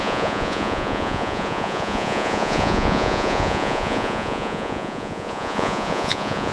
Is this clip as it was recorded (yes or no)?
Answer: no